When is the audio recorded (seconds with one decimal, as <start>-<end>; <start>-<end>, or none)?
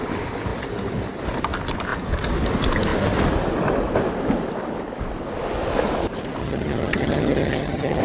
0.0-6.4